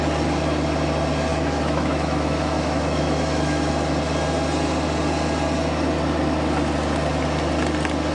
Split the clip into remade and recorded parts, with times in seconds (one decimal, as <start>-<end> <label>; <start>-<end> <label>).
0.0-1.3 recorded; 1.3-3.7 remade; 3.7-8.1 recorded